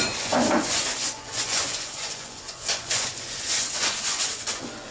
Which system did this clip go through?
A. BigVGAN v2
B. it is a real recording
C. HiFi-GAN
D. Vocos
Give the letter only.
D